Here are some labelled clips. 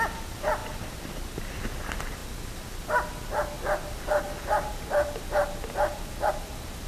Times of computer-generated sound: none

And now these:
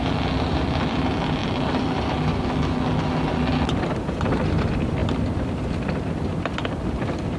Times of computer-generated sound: 0.0-1.4 (vocoder, BigVGAN v2); 4.5-7.4

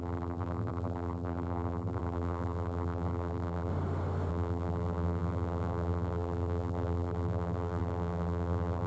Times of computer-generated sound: 0.0-3.7 (vocoder, BigVGAN v2); 4.3-8.9